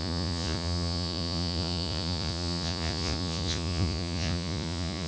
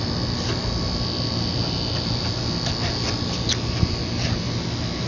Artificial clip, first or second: first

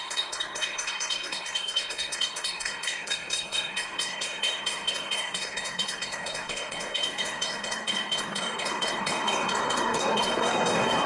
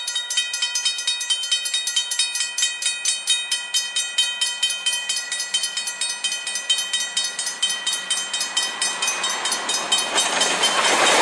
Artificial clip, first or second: first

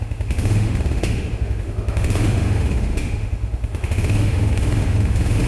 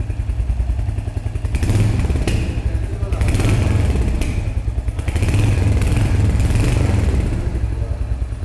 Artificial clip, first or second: first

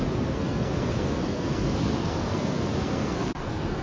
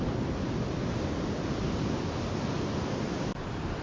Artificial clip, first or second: first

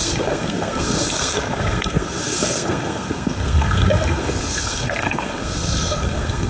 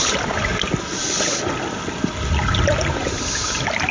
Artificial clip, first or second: first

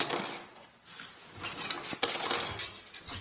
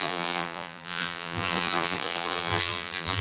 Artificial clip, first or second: second